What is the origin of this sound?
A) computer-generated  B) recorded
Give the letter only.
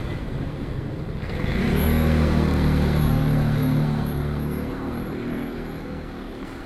A